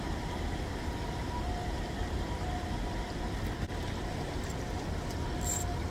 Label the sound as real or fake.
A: fake